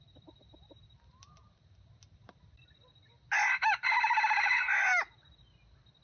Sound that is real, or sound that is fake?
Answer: real